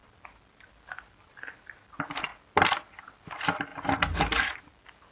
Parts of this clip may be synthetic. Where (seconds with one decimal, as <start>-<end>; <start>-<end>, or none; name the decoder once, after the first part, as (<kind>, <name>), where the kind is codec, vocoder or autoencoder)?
3.7-4.6 (vocoder, BigVGAN v2)